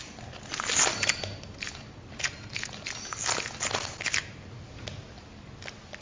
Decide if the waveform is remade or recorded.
recorded